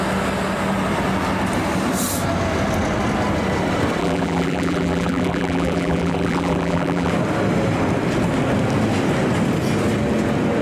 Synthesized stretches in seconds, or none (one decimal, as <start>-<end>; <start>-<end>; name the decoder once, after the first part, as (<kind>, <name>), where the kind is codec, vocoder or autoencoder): 4.0-7.1 (vocoder, BigVGAN v2)